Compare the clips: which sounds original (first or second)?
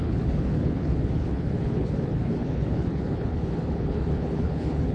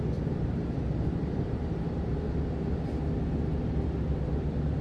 second